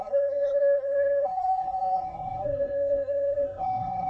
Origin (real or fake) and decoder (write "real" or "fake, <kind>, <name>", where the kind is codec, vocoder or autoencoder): fake, codec, SNAC